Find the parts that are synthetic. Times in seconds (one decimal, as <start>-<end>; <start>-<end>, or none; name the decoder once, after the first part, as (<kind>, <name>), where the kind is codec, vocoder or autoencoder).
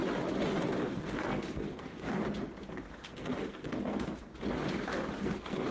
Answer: 0.8-2.2 (codec, SNAC); 2.7-4.3; 5.2-5.7